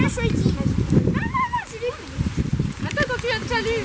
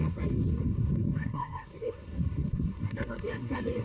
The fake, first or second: second